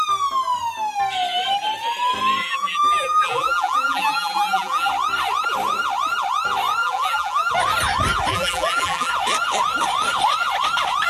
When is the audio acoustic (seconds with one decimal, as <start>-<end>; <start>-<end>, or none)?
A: 0.0-2.4; 4.9-6.8; 7.5-8.3; 9.1-11.1